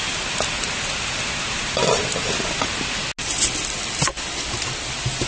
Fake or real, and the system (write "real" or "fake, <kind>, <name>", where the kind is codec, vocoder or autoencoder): real